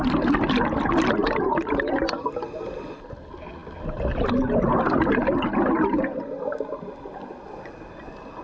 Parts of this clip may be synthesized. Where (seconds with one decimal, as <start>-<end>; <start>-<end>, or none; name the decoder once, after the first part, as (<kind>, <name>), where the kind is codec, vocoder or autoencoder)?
none